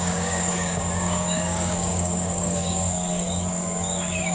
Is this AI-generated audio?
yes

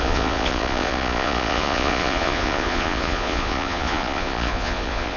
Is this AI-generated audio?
yes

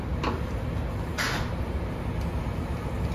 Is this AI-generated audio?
no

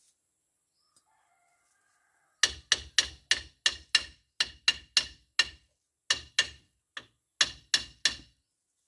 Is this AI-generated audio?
no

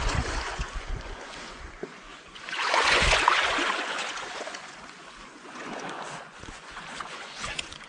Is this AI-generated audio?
yes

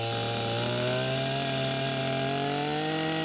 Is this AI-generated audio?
no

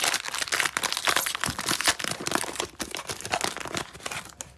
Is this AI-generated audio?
no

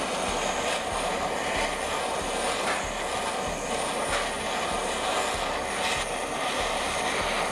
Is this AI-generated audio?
no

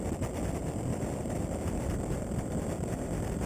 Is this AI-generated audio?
yes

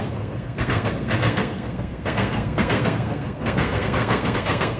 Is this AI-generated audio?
yes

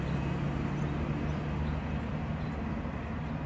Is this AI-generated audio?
no